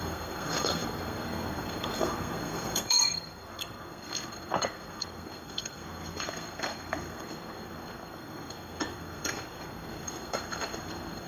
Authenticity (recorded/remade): remade